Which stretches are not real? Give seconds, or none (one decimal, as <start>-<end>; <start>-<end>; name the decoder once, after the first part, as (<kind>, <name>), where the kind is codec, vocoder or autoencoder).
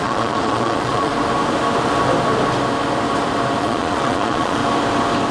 0.0-1.1 (vocoder, Vocos); 3.6-4.6